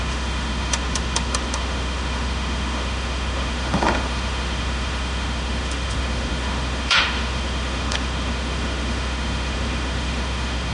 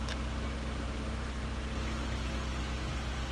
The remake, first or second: first